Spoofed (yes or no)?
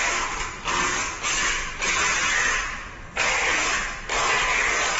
no